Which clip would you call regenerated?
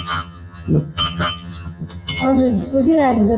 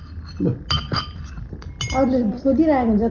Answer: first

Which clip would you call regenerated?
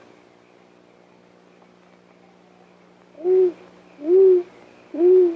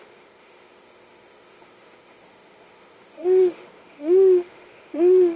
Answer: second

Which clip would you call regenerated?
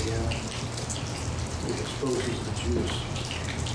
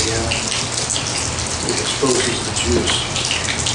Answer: first